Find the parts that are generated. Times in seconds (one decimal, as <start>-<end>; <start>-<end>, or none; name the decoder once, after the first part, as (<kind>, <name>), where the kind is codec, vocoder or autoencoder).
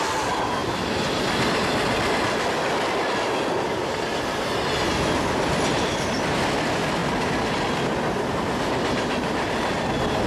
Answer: 0.0-0.6 (vocoder, BigVGAN v2); 5.8-7.0; 8.3-10.3